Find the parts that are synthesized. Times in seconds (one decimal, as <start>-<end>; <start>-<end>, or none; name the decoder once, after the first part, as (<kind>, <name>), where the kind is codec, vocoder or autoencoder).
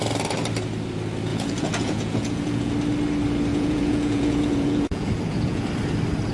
1.3-2.7 (vocoder, Vocos); 3.5-5.6